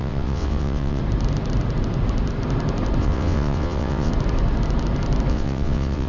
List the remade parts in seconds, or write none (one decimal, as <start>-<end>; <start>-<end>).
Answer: 0.0-1.0; 3.0-4.1; 5.3-6.1